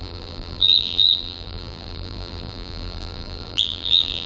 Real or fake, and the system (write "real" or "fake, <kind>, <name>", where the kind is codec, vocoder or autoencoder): fake, vocoder, BigVGAN v2